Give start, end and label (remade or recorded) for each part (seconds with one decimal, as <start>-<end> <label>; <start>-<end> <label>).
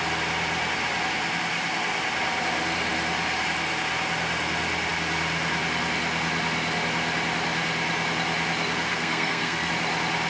0.0-8.9 recorded; 8.9-9.7 remade; 9.7-10.3 recorded